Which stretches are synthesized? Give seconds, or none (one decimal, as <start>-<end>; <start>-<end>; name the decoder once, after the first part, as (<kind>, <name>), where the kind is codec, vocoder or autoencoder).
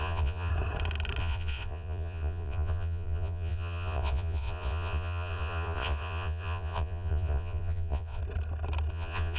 0.0-0.5 (vocoder, Vocos); 1.2-8.2; 8.9-9.4